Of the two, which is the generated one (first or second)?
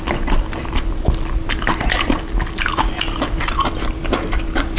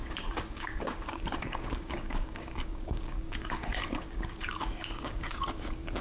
second